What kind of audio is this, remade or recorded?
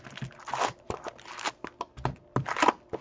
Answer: recorded